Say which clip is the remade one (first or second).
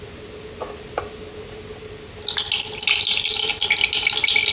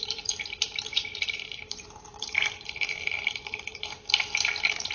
second